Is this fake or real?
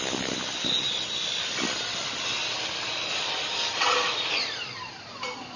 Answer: real